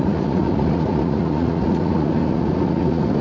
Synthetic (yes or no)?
yes